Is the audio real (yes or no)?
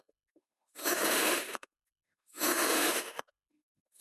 no